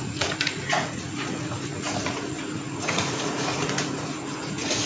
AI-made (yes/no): yes